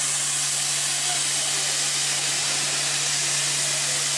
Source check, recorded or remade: recorded